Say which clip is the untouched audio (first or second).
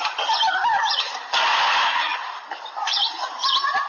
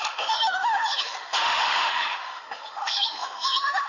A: first